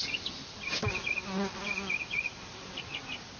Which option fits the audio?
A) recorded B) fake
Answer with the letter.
A